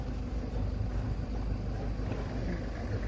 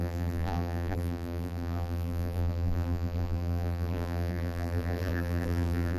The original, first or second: first